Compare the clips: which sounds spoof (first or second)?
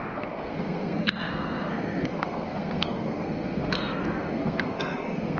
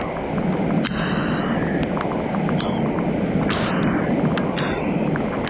first